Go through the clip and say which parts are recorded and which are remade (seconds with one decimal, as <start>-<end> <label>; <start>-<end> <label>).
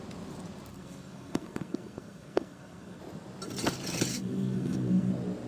0.0-0.7 recorded; 0.7-3.0 remade; 3.0-4.1 recorded; 4.1-5.1 remade; 5.1-5.5 recorded